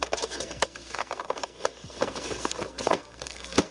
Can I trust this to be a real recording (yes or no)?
no